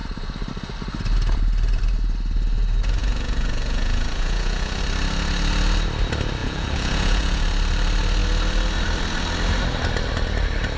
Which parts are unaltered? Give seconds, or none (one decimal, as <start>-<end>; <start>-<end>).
0.0-3.0; 4.8-6.4; 7.4-10.8

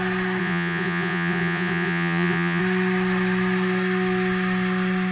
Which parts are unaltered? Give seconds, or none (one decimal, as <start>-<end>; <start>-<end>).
0.0-0.4; 2.6-5.1